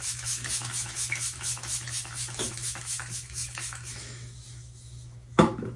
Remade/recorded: remade